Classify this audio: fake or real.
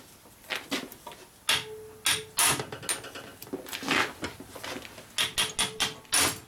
real